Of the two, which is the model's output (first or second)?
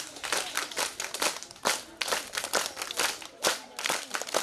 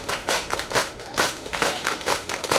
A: second